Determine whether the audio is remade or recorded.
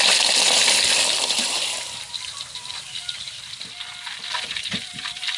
remade